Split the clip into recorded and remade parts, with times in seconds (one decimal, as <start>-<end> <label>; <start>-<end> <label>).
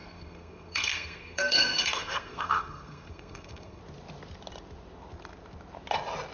0.0-3.8 remade; 3.8-6.3 recorded